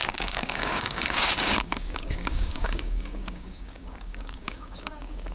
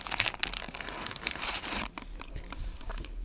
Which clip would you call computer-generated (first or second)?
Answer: first